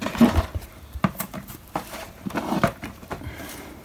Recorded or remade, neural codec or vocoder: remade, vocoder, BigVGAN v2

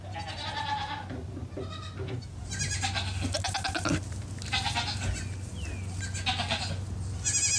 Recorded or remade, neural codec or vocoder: recorded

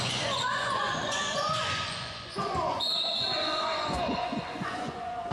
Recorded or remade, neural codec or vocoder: remade, vocoder, Vocos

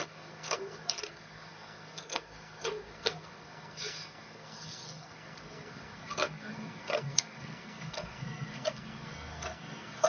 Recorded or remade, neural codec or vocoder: remade, codec, SNAC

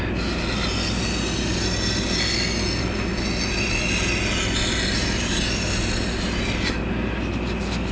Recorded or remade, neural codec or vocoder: recorded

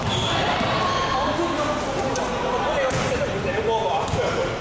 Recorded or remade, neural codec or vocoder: recorded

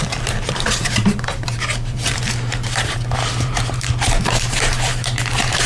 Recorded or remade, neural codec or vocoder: remade, vocoder, BigVGAN v2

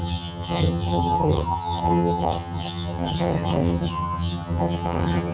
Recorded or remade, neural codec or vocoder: remade, vocoder, HiFi-GAN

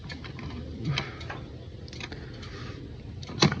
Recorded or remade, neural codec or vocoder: recorded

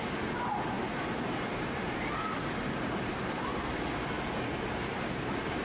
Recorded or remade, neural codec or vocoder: remade, vocoder, BigVGAN v2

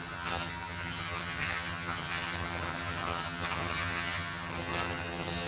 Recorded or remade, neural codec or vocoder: remade, vocoder, HiFi-GAN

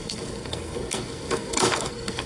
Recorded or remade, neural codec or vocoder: remade, codec, SNAC